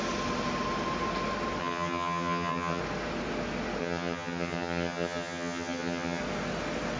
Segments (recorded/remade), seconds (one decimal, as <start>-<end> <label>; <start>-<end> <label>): 0.0-1.6 recorded; 1.6-2.8 remade; 2.8-3.8 recorded; 3.8-6.2 remade; 6.2-7.0 recorded